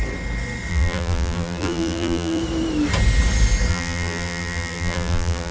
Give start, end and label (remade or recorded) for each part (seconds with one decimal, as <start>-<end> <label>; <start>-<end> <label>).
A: 0.0-0.7 recorded; 0.7-2.4 remade; 2.4-3.7 recorded; 3.7-5.5 remade